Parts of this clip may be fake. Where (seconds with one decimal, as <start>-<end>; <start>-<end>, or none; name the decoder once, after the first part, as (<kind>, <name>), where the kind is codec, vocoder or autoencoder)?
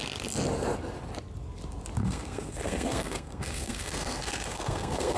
2.0-5.2 (codec, SNAC)